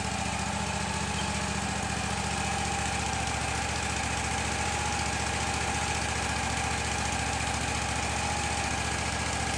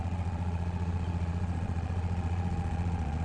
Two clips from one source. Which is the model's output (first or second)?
second